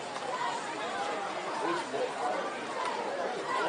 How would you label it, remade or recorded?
remade